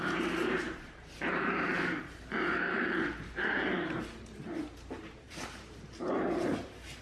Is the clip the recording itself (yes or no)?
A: no